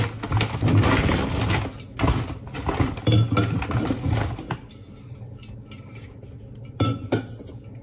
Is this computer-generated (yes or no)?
no